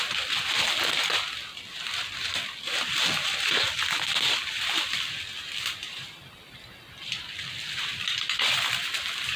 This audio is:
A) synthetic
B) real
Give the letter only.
B